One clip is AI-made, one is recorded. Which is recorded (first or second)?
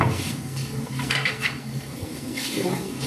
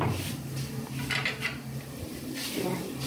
second